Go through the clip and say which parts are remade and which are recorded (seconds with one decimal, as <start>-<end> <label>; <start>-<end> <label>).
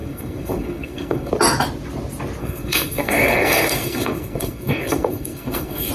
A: 0.0-1.3 remade; 1.3-2.4 recorded; 2.4-5.9 remade